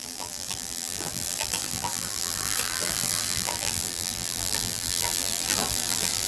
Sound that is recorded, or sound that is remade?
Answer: remade